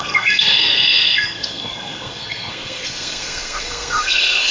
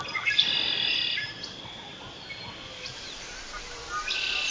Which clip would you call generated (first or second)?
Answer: first